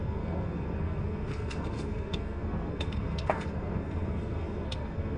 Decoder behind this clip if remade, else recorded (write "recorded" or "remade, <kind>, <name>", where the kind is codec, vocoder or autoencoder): remade, codec, SNAC